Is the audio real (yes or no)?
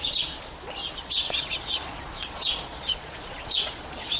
no